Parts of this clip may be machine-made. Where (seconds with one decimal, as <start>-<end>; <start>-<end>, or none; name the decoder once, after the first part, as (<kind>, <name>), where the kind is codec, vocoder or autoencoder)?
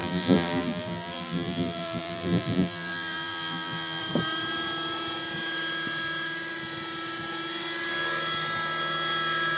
0.0-4.0 (vocoder, BigVGAN v2)